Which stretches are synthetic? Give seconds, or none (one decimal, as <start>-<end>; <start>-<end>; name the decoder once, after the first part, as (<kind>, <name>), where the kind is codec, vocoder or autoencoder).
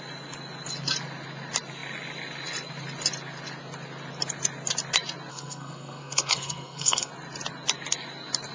5.3-7.1 (codec, SNAC)